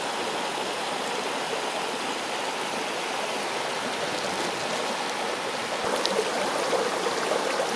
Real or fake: real